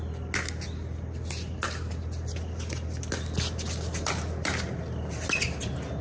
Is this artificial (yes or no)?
no